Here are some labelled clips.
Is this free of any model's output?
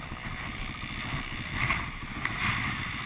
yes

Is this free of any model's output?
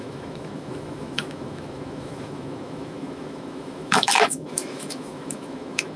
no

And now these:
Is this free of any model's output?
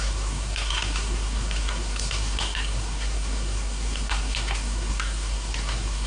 no